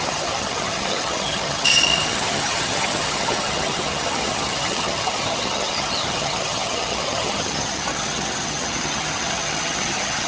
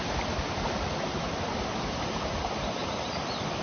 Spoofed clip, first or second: first